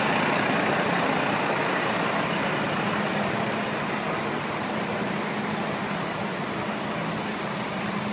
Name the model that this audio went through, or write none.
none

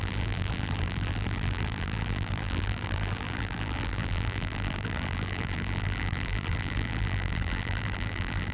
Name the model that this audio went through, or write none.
vocoder, BigVGAN v2